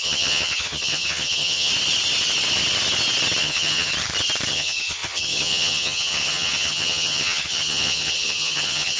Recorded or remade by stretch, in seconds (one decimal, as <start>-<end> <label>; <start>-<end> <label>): 0.0-1.7 remade; 1.7-3.4 recorded; 3.4-3.9 remade; 3.9-4.5 recorded; 4.5-9.0 remade